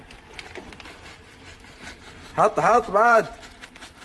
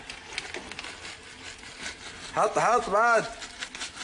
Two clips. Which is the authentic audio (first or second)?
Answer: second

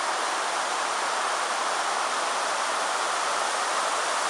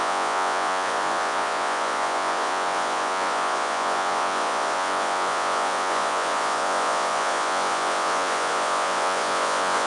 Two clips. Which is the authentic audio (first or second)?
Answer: first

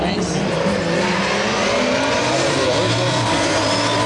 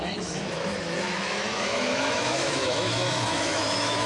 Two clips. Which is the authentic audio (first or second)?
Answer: first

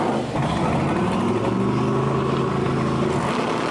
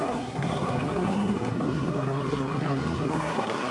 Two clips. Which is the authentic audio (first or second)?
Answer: first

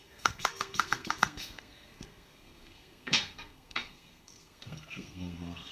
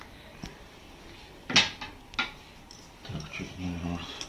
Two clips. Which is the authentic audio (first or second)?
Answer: second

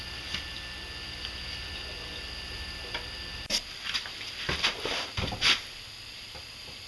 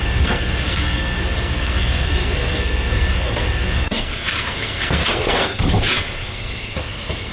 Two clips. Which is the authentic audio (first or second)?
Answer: first